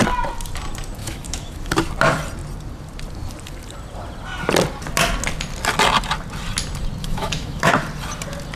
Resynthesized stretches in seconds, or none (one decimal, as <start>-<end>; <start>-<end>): 1.0-1.7; 7.0-7.7